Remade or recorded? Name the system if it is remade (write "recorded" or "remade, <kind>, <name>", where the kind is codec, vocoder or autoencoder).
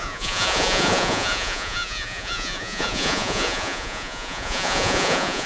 remade, vocoder, Vocos